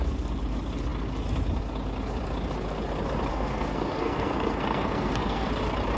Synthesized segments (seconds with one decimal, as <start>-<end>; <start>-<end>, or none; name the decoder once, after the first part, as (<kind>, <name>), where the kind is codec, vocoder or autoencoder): 3.3-5.5 (codec, SNAC)